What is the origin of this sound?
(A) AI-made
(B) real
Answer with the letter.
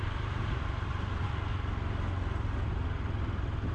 B